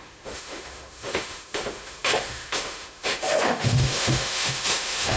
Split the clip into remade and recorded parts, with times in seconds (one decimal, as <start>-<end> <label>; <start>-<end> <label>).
0.0-5.2 remade